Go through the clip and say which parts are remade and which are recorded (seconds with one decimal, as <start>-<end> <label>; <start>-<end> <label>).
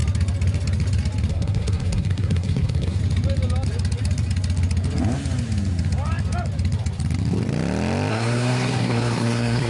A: 0.0-1.3 recorded; 1.3-3.0 remade; 3.0-8.1 recorded; 8.1-9.7 remade